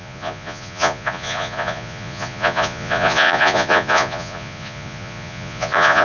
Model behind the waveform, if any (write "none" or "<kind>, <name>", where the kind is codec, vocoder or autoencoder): vocoder, Vocos